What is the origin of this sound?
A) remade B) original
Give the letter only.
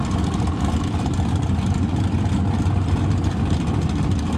B